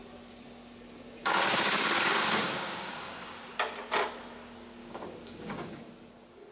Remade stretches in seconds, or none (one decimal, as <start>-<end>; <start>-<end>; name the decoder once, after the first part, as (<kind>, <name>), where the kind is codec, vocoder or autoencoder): 1.2-3.5 (codec, DAC); 4.8-5.9